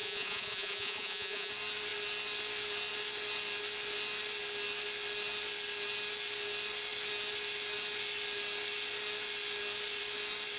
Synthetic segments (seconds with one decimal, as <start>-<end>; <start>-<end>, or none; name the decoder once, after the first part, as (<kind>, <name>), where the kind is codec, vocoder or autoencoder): 0.0-1.5 (vocoder, Vocos)